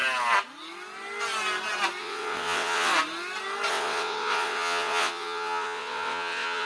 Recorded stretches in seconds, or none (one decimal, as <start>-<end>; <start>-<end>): 0.0-2.0; 2.9-3.7